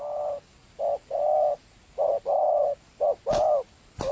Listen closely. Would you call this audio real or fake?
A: real